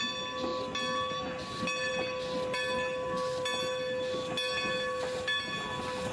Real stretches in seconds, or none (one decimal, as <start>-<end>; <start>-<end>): 0.0-6.1